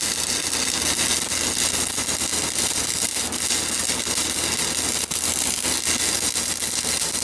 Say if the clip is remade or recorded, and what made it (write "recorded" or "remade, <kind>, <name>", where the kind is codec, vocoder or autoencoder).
recorded